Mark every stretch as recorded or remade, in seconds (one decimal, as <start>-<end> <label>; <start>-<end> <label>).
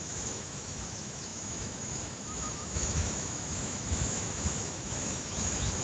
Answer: 0.0-5.8 remade